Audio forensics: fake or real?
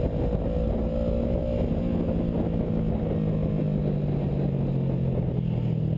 real